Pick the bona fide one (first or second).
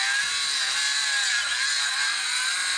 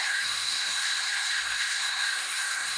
first